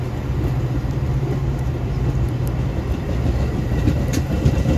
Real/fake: real